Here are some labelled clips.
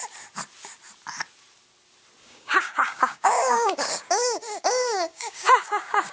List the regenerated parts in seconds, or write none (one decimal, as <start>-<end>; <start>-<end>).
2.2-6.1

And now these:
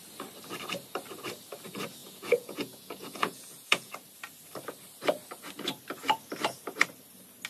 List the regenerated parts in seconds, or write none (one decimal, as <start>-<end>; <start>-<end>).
2.0-3.9

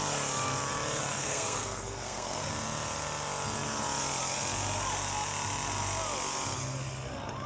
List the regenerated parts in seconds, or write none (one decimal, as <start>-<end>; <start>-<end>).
1.1-2.5